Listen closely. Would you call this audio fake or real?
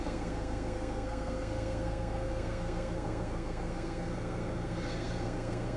fake